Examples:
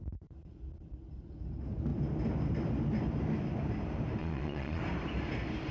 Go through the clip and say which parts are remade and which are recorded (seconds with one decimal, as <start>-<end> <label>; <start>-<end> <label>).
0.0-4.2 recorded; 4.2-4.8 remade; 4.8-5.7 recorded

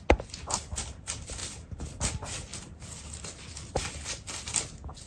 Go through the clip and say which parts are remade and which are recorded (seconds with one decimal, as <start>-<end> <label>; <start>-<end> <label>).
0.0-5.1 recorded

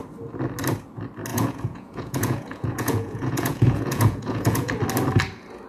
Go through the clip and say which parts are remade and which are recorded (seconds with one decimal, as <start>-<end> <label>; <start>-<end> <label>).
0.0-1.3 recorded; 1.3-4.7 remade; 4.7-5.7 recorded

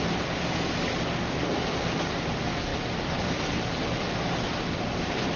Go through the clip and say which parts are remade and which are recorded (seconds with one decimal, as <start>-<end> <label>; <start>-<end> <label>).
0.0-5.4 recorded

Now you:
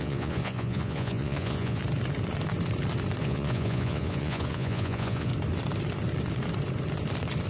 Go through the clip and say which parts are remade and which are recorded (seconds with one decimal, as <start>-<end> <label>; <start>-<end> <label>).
0.0-1.8 remade; 1.8-3.2 recorded; 3.2-5.3 remade; 5.3-7.5 recorded

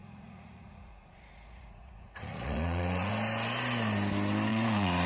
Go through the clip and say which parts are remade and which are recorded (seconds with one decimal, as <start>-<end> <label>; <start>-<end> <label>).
0.0-3.1 remade; 3.1-4.5 recorded; 4.5-5.1 remade

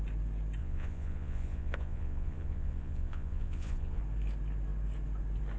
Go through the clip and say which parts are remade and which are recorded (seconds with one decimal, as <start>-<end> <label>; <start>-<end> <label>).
0.0-0.6 recorded; 0.6-4.0 remade; 4.0-5.6 recorded

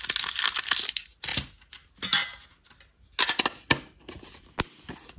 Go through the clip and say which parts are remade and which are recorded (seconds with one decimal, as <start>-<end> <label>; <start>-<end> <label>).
0.0-5.2 recorded